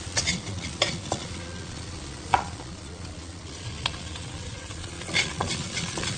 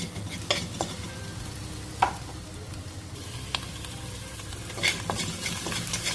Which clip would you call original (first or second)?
second